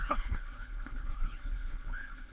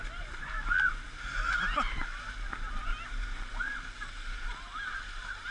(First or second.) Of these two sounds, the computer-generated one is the first